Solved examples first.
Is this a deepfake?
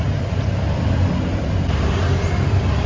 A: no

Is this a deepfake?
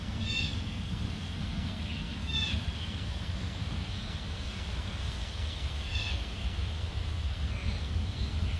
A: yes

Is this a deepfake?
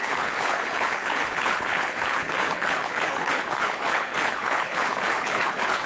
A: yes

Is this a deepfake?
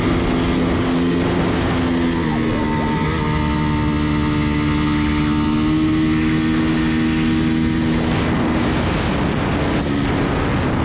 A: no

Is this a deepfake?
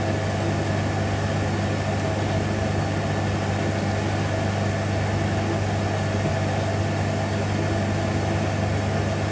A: no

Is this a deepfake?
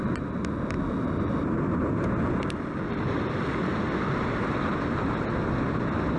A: no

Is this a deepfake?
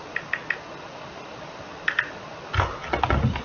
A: no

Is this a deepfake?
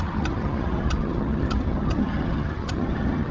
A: yes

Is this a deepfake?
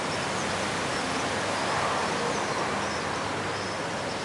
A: no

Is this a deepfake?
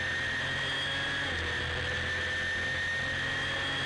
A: no